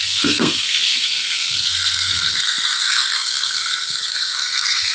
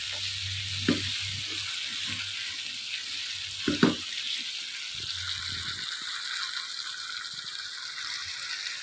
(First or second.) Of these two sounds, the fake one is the first